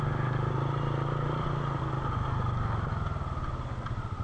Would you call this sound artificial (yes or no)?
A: no